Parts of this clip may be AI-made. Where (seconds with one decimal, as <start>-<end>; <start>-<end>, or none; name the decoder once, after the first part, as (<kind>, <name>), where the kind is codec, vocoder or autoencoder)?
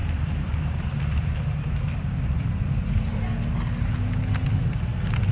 0.0-3.2 (vocoder, BigVGAN v2)